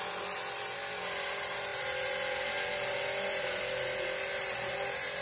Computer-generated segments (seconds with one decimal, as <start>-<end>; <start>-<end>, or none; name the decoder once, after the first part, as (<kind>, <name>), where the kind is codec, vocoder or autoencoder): none